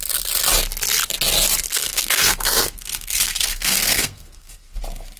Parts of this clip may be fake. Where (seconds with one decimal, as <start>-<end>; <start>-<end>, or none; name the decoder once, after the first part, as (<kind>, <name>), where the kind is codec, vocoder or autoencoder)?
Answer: 1.7-4.8 (codec, SNAC)